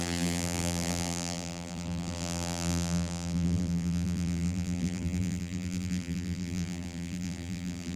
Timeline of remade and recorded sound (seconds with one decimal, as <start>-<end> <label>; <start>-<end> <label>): 0.0-8.0 remade